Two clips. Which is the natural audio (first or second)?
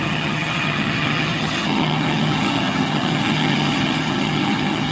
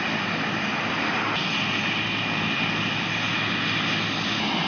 second